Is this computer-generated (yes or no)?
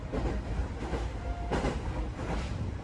yes